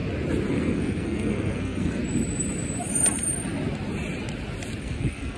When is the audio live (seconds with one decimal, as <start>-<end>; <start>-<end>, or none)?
0.0-0.5; 2.0-4.8